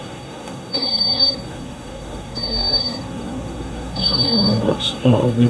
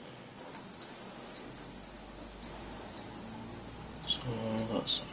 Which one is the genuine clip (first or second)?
second